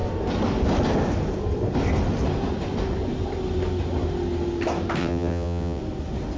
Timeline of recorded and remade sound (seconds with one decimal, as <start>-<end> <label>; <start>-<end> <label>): 0.0-5.0 recorded; 5.0-5.8 remade; 5.8-6.4 recorded